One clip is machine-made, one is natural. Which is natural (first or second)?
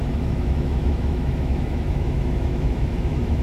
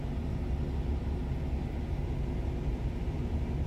second